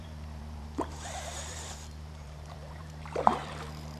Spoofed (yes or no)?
yes